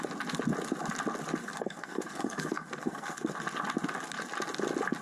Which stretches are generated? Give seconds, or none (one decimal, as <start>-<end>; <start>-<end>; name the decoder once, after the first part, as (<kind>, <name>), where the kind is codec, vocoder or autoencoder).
1.4-3.3 (codec, SNAC)